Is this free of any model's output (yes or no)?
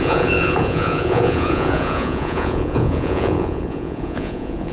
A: no